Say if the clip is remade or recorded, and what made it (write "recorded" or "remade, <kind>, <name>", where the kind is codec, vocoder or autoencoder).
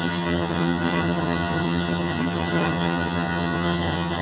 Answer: remade, vocoder, HiFi-GAN